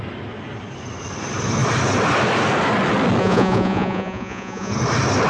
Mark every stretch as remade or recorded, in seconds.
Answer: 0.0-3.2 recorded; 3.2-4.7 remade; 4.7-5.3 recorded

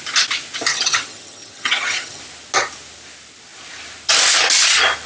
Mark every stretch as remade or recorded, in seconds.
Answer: 0.0-0.7 recorded; 0.7-2.2 remade; 2.2-5.1 recorded